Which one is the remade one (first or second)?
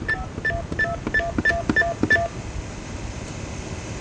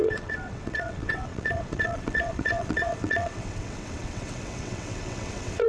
second